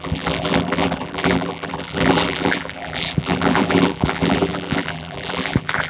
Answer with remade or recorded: remade